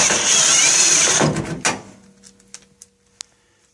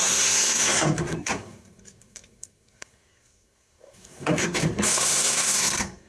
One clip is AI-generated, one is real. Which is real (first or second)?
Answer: first